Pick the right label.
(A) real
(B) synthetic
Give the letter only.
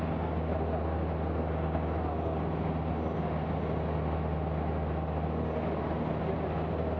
A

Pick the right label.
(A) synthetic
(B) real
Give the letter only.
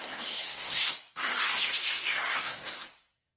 A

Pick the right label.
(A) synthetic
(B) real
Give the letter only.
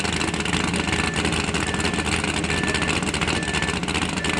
B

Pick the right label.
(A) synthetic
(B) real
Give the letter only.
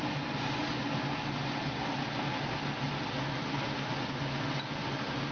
B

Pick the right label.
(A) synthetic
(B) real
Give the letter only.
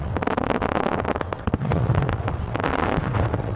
A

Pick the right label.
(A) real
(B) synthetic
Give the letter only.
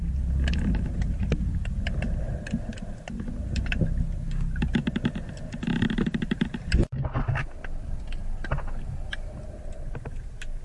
A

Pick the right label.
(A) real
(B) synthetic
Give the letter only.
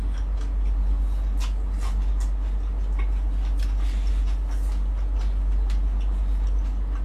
A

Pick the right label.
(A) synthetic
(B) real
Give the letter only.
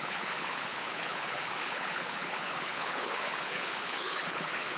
A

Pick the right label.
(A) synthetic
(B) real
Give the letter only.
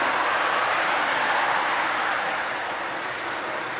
B